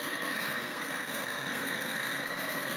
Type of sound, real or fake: fake